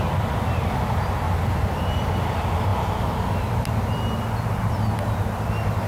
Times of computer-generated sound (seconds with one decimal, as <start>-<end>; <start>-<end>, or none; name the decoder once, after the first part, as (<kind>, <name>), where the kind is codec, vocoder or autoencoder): none